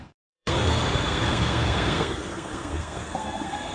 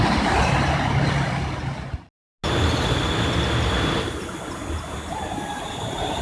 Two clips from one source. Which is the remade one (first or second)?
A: first